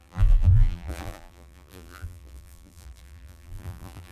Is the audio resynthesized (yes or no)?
yes